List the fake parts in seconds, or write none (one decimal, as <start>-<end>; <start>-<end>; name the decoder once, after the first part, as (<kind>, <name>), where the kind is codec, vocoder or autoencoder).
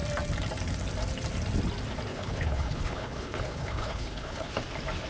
2.1-4.5 (codec, HILCodec)